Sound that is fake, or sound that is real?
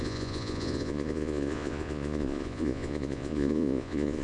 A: fake